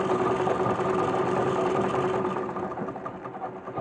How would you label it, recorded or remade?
recorded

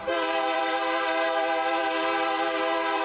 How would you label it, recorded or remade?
remade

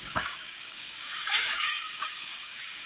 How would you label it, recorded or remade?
remade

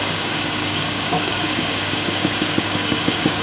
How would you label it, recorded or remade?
remade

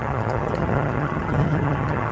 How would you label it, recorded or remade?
remade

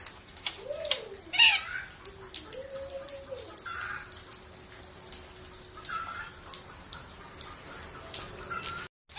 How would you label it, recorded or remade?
recorded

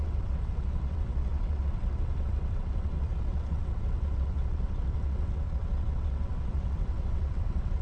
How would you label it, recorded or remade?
remade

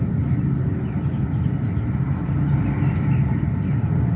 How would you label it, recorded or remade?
recorded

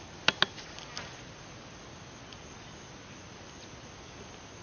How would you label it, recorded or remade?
recorded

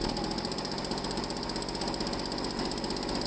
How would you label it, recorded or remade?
recorded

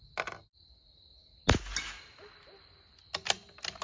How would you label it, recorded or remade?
recorded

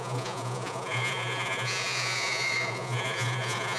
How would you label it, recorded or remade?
remade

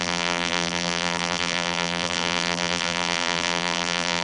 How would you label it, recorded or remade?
remade